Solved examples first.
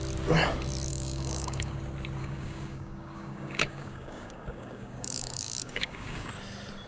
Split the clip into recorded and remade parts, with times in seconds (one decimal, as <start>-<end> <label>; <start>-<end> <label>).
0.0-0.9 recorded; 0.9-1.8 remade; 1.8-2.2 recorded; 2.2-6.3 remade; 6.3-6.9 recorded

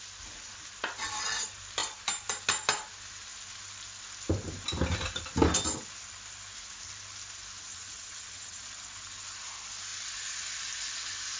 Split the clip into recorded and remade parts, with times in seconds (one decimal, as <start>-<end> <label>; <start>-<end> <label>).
0.0-7.7 recorded; 7.7-8.6 remade; 8.6-11.4 recorded

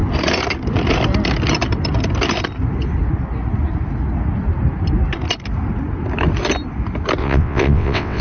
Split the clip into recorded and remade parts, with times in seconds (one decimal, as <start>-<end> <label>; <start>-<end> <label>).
0.0-7.2 recorded; 7.2-8.2 remade